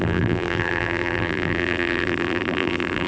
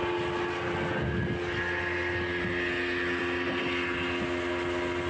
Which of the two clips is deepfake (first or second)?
first